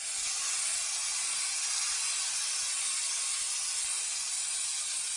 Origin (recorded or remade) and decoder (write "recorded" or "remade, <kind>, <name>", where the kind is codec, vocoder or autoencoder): recorded